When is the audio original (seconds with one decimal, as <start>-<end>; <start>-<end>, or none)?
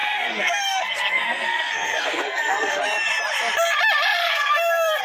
2.8-4.2